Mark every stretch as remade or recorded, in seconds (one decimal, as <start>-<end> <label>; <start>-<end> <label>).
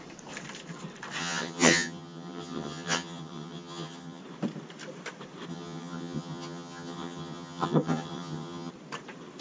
0.0-1.2 recorded; 1.2-4.2 remade; 4.2-5.5 recorded; 5.5-8.7 remade; 8.7-9.4 recorded